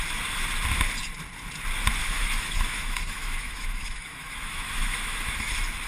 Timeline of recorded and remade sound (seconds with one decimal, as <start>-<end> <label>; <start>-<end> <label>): 0.0-2.0 recorded; 2.0-5.5 remade; 5.5-5.9 recorded